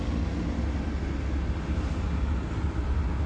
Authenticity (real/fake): real